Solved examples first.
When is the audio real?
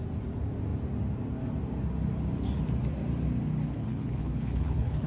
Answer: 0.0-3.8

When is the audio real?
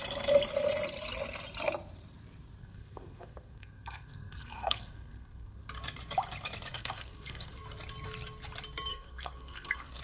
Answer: 0.0-2.6; 5.6-6.7; 7.6-8.9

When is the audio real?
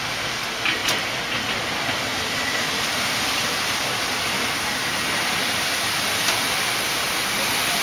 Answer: 0.0-7.8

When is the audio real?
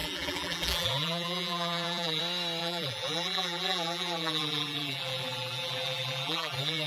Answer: 2.2-2.6